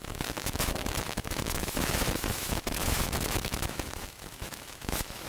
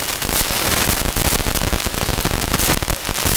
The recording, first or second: second